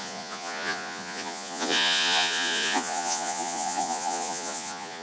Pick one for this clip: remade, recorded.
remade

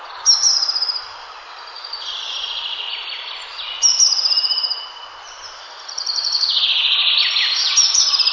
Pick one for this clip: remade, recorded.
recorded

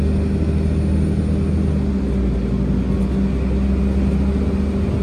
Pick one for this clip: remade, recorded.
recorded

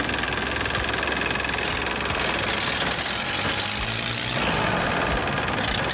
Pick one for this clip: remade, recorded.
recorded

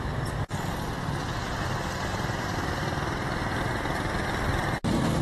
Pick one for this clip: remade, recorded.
remade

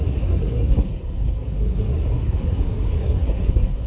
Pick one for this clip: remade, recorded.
remade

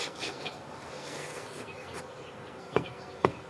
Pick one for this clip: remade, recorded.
remade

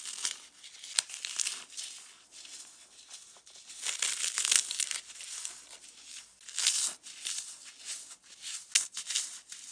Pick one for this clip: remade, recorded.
recorded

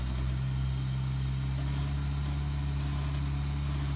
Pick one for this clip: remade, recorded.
recorded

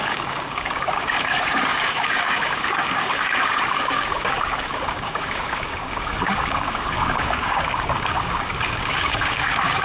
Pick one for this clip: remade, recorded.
remade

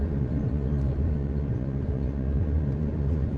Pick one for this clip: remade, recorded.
remade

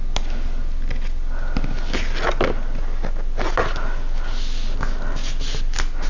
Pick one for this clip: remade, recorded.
recorded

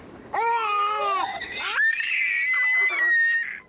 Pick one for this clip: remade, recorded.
recorded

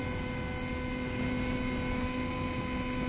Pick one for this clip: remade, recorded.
recorded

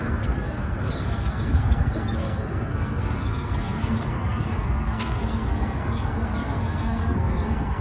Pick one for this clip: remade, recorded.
remade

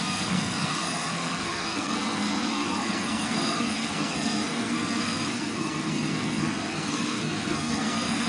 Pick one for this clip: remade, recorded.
remade